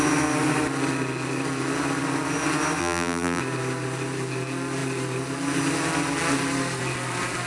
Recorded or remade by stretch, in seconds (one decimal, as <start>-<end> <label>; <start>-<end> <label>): 0.0-2.8 recorded; 2.8-3.4 remade; 3.4-7.5 recorded